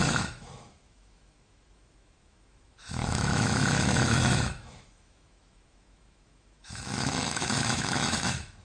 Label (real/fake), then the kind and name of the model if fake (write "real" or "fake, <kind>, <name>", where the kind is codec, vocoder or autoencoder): fake, autoencoder, DAC-VAE